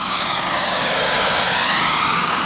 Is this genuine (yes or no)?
no